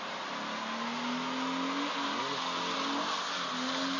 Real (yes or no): yes